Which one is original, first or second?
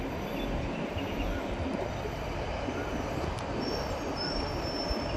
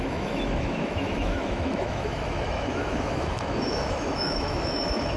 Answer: first